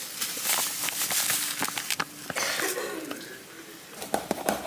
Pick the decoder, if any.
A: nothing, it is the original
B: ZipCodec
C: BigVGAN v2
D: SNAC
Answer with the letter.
A